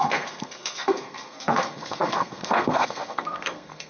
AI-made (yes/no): yes